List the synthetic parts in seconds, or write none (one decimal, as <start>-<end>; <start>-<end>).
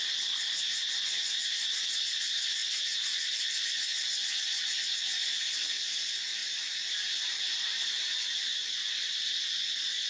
6.4-8.9